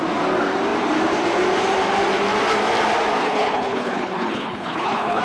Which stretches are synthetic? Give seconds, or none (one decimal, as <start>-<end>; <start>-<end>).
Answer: 3.2-5.2

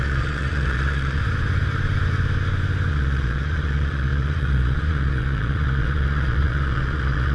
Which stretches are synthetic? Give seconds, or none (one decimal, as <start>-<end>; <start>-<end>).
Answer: 0.0-1.2; 2.9-7.3